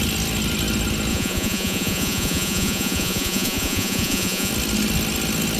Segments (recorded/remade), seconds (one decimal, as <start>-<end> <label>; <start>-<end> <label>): 0.0-1.1 recorded; 1.1-4.5 remade; 4.5-5.6 recorded